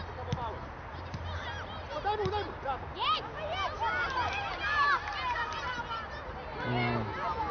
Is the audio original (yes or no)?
yes